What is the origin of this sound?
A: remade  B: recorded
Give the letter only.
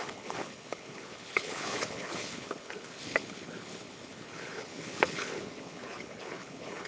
A